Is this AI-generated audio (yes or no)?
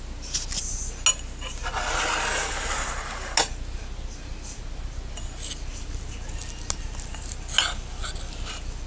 no